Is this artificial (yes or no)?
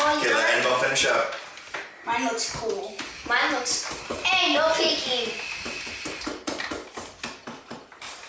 no